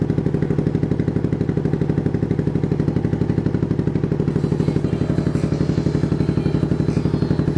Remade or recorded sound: recorded